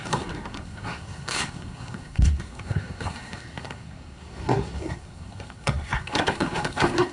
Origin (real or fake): fake